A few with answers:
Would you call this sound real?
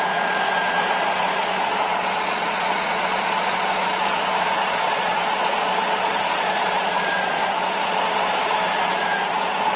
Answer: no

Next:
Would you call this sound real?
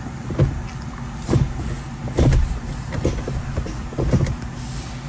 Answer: yes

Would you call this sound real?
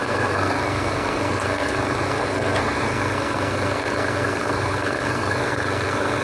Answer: no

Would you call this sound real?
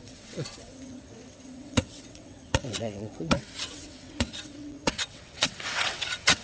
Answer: no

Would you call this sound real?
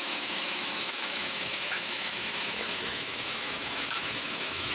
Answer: no